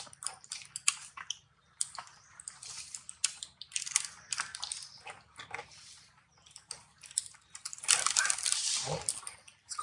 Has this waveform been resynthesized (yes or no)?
yes